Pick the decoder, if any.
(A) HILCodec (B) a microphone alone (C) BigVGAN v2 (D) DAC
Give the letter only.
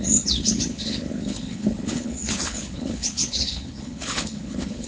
A